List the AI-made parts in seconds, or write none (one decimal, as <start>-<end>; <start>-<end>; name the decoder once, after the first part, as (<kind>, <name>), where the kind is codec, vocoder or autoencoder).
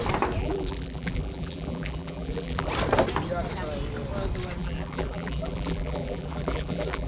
0.4-2.7 (vocoder, BigVGAN v2); 4.6-7.1